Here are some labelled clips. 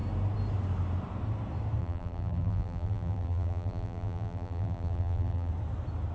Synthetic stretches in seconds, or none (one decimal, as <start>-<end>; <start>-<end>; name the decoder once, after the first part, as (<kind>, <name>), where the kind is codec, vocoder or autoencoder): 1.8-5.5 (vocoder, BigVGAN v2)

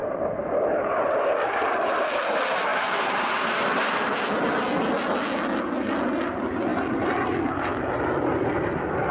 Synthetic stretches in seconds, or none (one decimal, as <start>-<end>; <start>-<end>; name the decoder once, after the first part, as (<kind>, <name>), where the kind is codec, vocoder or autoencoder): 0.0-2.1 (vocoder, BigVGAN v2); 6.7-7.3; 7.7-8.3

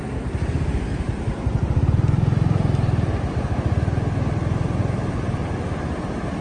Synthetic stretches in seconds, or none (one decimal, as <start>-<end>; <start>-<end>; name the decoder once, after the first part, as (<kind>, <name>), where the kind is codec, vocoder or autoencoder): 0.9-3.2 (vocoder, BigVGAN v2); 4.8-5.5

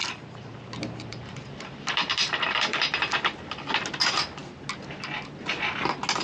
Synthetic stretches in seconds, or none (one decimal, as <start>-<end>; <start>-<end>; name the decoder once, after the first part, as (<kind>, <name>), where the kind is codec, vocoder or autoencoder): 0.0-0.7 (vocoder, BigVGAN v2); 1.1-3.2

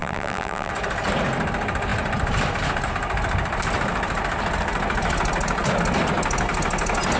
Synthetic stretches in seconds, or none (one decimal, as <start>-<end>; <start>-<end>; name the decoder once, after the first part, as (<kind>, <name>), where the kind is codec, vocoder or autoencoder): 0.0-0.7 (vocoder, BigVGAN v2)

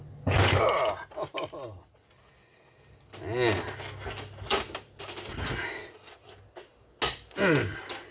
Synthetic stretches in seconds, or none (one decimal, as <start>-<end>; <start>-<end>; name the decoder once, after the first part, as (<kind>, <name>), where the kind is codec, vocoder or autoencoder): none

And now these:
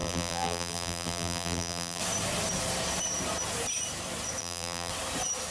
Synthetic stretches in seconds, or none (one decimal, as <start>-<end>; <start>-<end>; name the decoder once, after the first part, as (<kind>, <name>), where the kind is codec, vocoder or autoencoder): 0.0-2.0 (vocoder, BigVGAN v2); 4.4-4.9

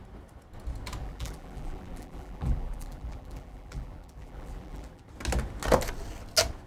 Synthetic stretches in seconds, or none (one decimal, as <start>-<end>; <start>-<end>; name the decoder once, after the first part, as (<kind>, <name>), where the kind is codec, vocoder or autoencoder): 1.0-5.0 (vocoder, BigVGAN v2)